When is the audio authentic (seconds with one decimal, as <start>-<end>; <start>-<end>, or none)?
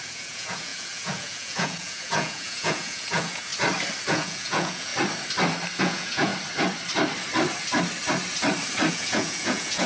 3.5-4.1; 4.9-5.8; 6.3-8.9